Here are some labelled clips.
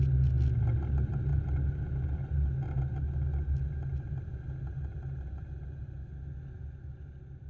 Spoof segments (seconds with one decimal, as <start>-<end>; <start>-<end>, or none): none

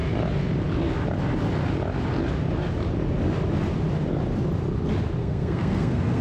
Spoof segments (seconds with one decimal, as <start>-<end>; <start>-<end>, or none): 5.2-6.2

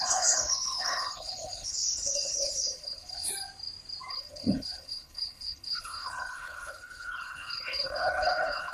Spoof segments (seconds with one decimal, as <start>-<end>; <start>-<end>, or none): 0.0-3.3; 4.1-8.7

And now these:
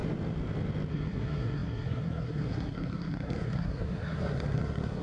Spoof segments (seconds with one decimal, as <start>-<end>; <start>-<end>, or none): 0.9-5.0